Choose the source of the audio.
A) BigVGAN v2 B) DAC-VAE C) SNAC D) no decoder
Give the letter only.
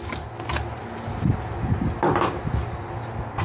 D